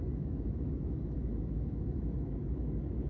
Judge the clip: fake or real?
fake